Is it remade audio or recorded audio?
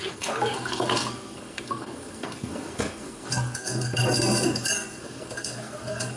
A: remade